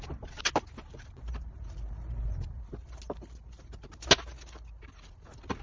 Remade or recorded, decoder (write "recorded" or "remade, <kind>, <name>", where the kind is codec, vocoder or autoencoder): recorded